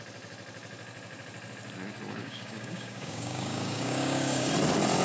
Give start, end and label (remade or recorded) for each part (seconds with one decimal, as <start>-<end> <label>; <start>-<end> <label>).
0.0-2.2 recorded; 2.2-4.5 remade; 4.5-5.0 recorded